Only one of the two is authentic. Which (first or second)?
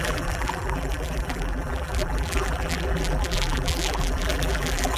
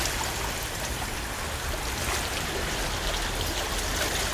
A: second